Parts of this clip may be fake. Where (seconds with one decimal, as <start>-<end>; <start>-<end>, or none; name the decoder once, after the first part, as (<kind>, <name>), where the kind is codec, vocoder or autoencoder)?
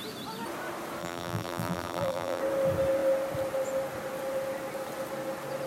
1.0-2.4 (vocoder, BigVGAN v2)